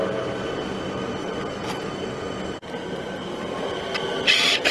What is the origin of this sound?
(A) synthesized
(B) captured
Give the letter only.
B